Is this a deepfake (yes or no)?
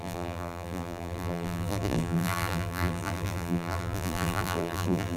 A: yes